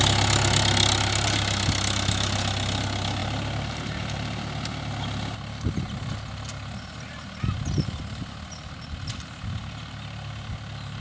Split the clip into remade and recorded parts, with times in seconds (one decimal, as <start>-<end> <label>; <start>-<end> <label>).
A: 0.0-11.0 recorded